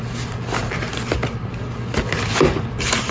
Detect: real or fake real